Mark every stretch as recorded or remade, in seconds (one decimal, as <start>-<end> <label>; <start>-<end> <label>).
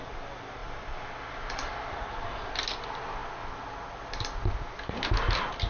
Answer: 0.0-0.6 recorded; 0.6-2.0 remade; 2.0-5.7 recorded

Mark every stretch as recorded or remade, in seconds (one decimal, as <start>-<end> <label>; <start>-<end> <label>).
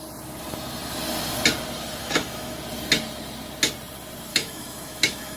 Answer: 0.0-2.0 recorded; 2.0-2.6 remade; 2.6-4.3 recorded; 4.3-5.4 remade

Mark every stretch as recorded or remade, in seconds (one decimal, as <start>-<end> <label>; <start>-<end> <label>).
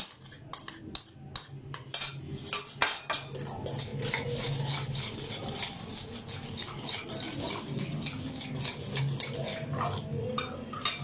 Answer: 0.0-11.0 recorded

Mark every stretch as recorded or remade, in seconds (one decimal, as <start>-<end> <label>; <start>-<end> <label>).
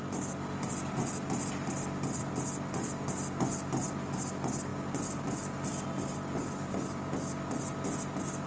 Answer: 0.0-8.5 recorded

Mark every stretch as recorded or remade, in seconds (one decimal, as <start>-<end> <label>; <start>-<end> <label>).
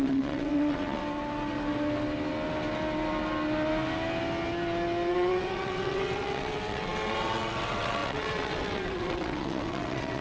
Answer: 0.0-1.0 remade; 1.0-5.1 recorded; 5.1-10.2 remade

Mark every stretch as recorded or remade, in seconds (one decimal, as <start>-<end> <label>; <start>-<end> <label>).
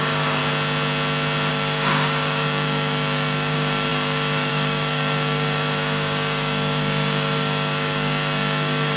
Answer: 0.0-0.4 remade; 0.4-1.5 recorded; 1.5-9.0 remade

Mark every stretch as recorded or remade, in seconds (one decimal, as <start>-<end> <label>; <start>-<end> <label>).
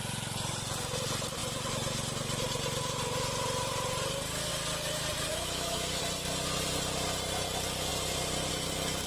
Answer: 0.0-5.3 recorded; 5.3-6.0 remade; 6.0-9.1 recorded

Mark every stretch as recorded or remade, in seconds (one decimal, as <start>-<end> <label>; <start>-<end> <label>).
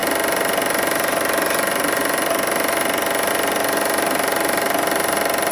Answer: 0.0-5.5 recorded